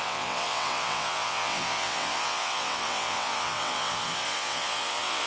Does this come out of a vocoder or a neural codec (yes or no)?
yes